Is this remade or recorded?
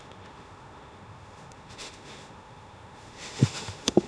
remade